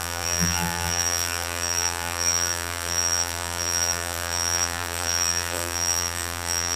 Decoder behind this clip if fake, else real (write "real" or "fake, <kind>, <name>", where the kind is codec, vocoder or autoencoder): fake, vocoder, BigVGAN v2